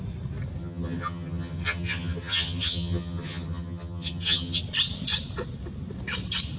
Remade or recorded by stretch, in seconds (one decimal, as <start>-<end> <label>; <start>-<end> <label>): 0.0-0.6 recorded; 0.6-4.6 remade; 4.6-6.6 recorded

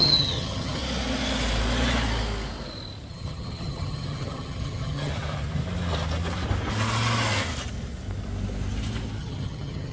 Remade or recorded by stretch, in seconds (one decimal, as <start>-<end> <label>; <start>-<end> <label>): 0.0-0.8 remade; 0.8-3.1 recorded; 3.1-5.1 remade; 5.1-9.2 recorded; 9.2-9.9 remade

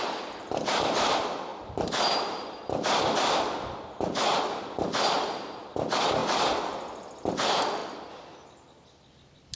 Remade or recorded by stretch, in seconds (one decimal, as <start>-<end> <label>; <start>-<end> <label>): 0.0-9.6 recorded

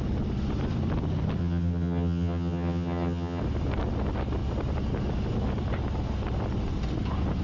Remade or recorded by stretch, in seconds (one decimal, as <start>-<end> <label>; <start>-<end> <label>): 0.0-1.4 recorded; 1.4-3.4 remade; 3.4-7.4 recorded

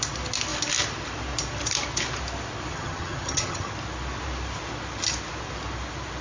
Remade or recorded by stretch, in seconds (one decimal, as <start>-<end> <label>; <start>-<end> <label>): 0.0-2.7 recorded; 2.7-3.7 remade; 3.7-6.2 recorded

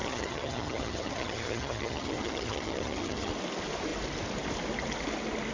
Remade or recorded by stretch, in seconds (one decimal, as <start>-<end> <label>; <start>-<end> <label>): 0.0-3.3 remade; 3.3-5.5 recorded

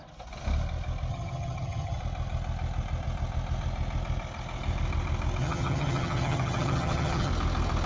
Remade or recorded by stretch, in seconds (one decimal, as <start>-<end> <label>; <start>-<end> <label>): 0.0-1.1 recorded; 1.1-2.0 remade; 2.0-5.4 recorded; 5.4-7.3 remade; 7.3-7.9 recorded